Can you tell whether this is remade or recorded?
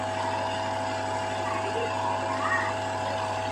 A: recorded